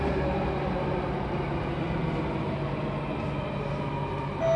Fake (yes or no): no